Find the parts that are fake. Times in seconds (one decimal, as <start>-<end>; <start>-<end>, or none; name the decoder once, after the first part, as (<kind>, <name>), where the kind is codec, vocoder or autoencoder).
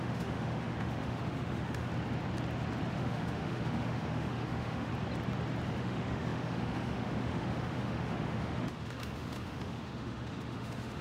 0.0-1.9 (autoencoder, DAC-VAE); 2.9-4.9; 5.8-11.0